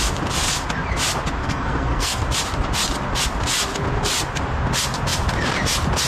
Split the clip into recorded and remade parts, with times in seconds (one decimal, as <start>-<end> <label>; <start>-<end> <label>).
0.0-1.4 recorded; 1.4-2.2 remade; 2.2-6.1 recorded

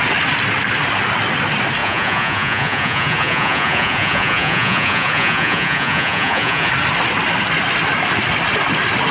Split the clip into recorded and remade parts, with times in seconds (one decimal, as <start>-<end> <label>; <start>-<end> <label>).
0.0-1.8 recorded; 1.8-6.7 remade; 6.7-9.1 recorded

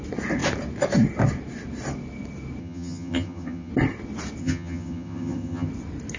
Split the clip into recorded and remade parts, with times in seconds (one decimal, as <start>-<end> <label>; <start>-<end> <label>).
0.0-2.6 recorded; 2.6-3.7 remade; 3.7-4.4 recorded; 4.4-5.7 remade; 5.7-6.2 recorded

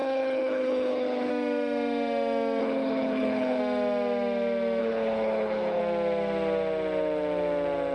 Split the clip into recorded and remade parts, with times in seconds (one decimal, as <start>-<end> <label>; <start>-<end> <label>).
0.0-1.3 remade; 1.3-2.6 recorded; 2.6-3.6 remade; 3.6-4.8 recorded; 4.8-5.8 remade; 5.8-7.9 recorded